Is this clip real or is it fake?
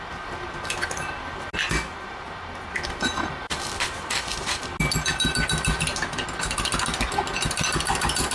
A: real